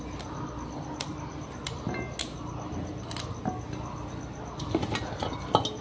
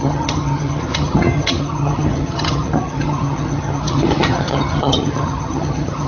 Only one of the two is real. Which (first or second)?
first